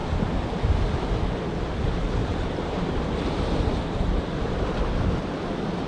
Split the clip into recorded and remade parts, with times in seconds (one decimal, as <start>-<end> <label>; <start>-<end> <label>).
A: 0.0-2.2 recorded; 2.2-4.8 remade; 4.8-5.9 recorded